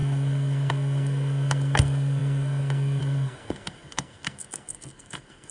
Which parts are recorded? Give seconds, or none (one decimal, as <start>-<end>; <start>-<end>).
none